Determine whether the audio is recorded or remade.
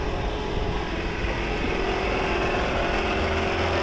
recorded